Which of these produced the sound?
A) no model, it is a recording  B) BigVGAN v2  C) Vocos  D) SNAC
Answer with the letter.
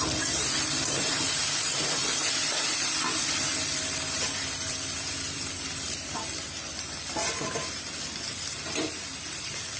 B